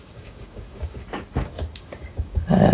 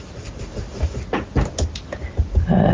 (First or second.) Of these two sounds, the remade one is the first